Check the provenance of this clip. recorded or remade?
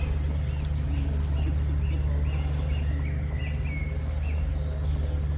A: recorded